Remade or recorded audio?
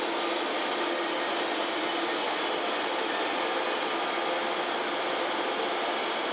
recorded